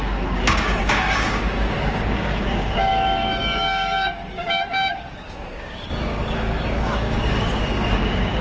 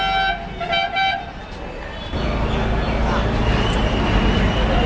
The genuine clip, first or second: second